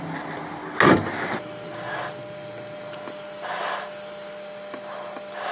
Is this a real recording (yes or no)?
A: yes